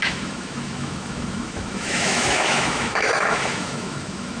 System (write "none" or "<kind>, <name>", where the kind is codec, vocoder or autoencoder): autoencoder, DAC-VAE